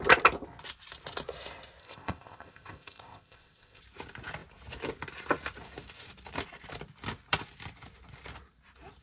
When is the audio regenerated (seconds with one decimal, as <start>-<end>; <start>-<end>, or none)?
1.8-3.8